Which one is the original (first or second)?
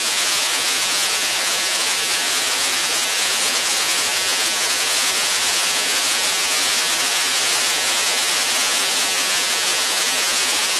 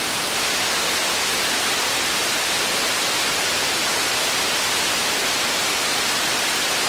second